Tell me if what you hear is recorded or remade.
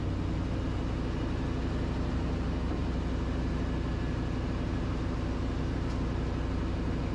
recorded